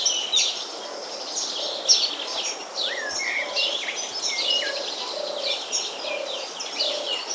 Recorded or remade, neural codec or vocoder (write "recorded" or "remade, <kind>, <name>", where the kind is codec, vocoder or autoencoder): recorded